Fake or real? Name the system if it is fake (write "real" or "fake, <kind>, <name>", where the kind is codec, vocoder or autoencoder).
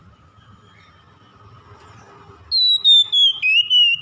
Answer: real